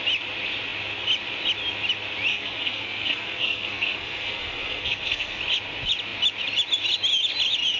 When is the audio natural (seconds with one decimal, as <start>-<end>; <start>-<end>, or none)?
0.0-2.3; 5.4-7.8